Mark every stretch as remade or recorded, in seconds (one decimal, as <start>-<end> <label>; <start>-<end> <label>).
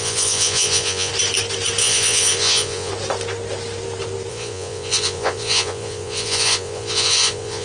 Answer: 0.0-1.1 remade; 1.1-1.8 recorded; 1.8-2.9 remade; 2.9-4.3 recorded; 4.3-7.6 remade